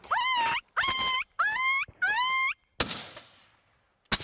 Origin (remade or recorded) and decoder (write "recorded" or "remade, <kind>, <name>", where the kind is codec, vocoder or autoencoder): recorded